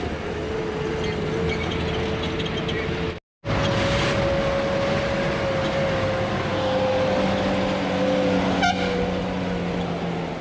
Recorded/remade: recorded